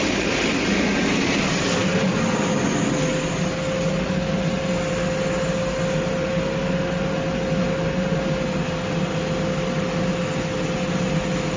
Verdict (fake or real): real